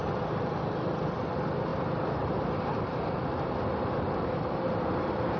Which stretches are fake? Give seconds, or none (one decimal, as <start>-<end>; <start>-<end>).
none